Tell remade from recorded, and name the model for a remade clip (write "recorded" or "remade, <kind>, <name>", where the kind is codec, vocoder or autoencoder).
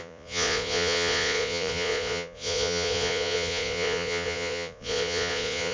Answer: remade, vocoder, Vocos